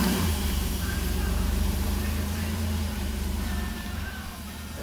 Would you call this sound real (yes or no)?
no